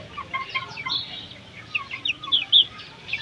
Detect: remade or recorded remade